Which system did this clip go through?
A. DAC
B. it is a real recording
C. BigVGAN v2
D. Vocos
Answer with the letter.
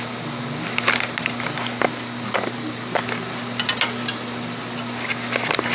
B